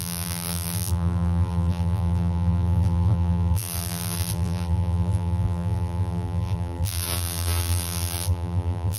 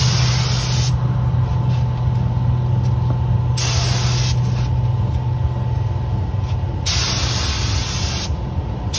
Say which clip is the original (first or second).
second